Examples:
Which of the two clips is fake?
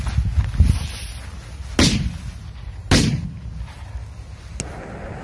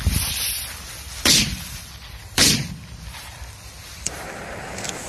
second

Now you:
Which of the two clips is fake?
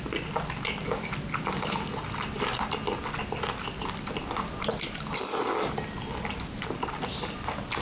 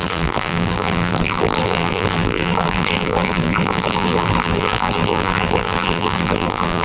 second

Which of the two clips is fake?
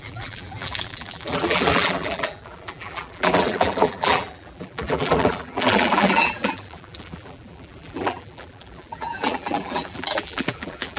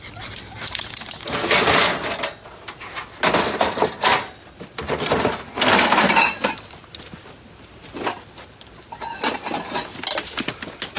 first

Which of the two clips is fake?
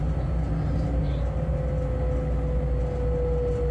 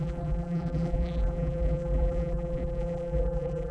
second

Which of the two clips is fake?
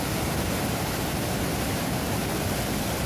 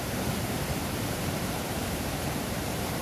second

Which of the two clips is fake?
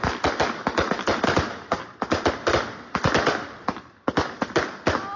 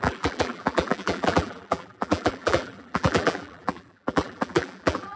second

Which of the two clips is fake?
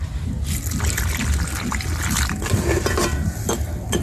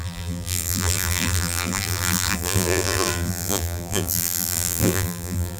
second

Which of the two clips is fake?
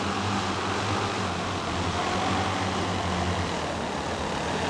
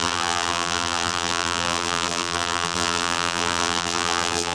second